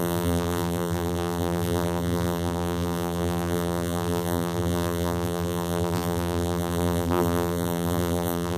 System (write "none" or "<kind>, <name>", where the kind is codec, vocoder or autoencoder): vocoder, BigVGAN v2